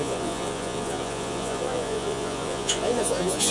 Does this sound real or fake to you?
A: fake